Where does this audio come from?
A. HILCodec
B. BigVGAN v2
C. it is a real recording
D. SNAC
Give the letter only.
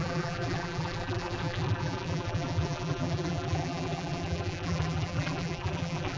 B